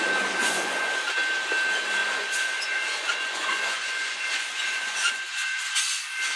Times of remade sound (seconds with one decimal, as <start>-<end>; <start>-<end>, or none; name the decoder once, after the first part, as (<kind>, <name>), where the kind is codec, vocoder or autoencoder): 0.4-1.0 (vocoder, Vocos); 2.0-5.8